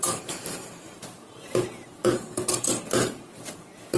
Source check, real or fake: fake